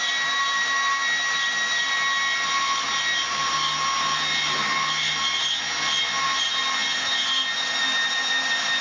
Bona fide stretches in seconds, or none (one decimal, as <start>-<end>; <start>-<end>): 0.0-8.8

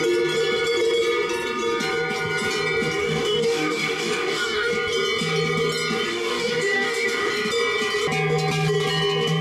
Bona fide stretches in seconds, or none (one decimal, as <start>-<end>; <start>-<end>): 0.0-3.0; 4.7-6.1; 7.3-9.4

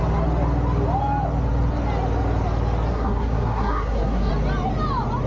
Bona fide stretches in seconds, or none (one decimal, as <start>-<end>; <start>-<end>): 0.0-2.9; 4.3-5.3

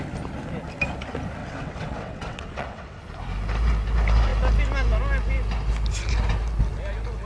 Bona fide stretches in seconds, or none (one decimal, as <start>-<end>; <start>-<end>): 0.0-1.4; 3.0-7.3

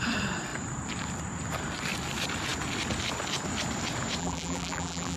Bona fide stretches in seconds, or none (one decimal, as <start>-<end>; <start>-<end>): 0.0-4.2